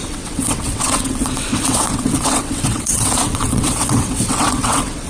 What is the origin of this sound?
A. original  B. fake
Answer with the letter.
B